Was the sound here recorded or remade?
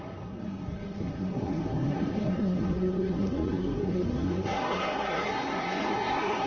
remade